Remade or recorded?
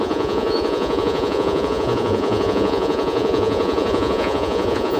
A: remade